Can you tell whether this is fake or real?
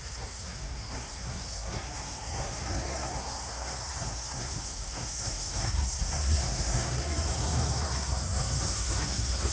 fake